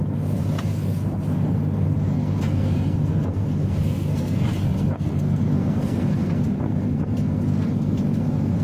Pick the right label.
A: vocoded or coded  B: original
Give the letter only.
A